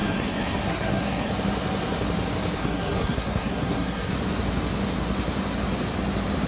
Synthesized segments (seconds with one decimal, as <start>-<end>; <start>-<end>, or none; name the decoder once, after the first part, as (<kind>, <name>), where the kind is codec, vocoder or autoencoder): 0.0-1.3 (codec, SNAC); 2.6-4.1